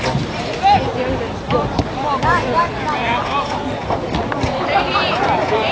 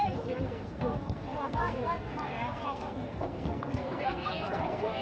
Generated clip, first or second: second